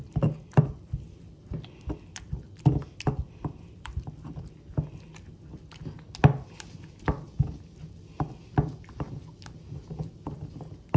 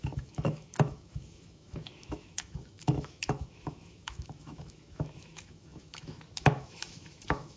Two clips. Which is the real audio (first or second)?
first